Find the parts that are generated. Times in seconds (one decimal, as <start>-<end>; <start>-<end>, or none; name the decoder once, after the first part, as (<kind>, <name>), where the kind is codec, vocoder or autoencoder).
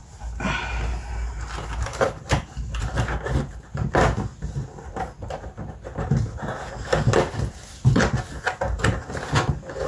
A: 1.9-3.9 (vocoder, BigVGAN v2)